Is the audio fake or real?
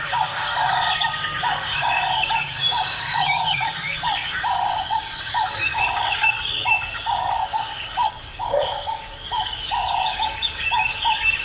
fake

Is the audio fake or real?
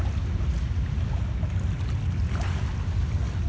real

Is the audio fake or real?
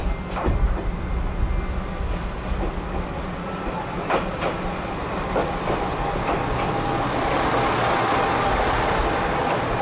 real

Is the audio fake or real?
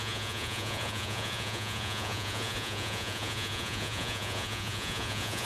fake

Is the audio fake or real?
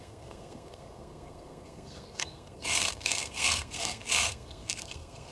fake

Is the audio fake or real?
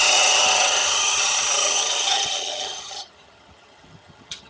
fake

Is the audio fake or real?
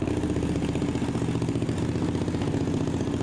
real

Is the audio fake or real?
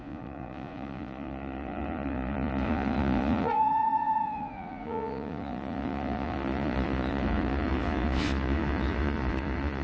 fake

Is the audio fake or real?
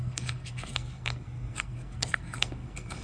fake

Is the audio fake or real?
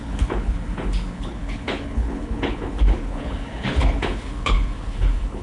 fake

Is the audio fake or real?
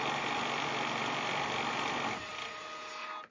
real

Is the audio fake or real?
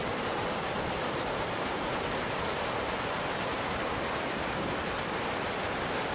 real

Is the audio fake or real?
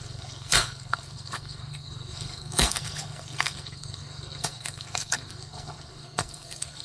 fake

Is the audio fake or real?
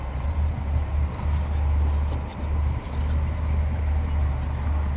real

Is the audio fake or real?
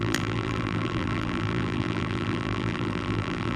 fake